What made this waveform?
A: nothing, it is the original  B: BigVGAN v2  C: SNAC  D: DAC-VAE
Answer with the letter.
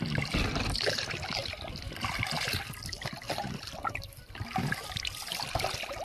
A